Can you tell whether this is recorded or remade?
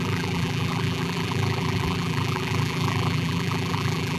remade